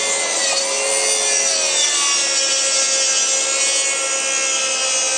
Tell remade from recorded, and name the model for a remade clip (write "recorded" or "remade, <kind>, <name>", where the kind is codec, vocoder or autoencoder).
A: recorded